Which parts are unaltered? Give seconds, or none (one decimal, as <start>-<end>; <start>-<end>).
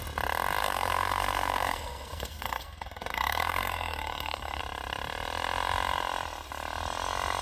0.0-0.6; 4.6-7.4